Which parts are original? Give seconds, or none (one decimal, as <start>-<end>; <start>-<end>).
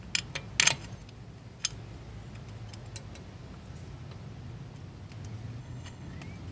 0.0-5.6; 6.1-6.5